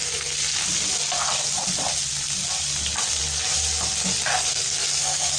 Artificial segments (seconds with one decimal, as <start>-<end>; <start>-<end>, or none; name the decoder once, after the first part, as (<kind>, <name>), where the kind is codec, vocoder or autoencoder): 4.3-5.4 (codec, SNAC)